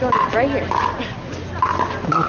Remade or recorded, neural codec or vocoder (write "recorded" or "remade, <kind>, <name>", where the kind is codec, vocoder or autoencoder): recorded